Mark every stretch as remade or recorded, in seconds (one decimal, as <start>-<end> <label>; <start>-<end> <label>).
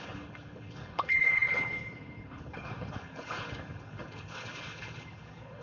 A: 0.0-5.6 remade